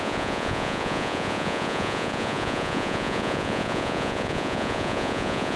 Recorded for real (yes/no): no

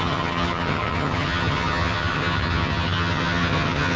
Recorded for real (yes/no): no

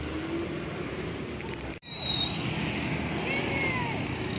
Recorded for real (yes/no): yes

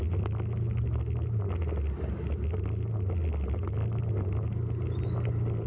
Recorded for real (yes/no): yes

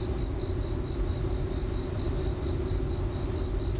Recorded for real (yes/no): yes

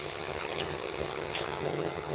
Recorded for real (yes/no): no